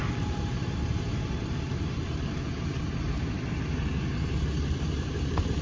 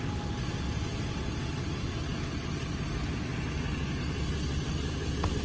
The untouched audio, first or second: second